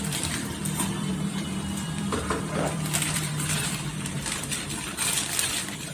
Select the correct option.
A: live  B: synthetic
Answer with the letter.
B